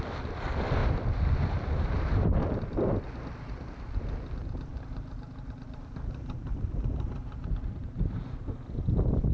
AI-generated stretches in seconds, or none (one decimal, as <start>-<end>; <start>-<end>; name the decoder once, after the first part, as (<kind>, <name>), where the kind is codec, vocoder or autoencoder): 4.7-8.4 (vocoder, BigVGAN v2)